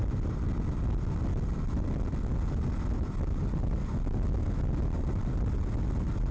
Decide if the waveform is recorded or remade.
recorded